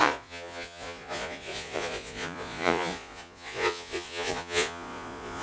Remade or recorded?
remade